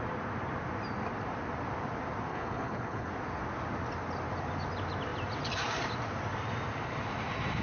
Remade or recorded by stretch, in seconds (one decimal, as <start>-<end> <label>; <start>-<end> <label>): 0.0-2.3 recorded; 2.3-3.1 remade; 3.1-7.6 recorded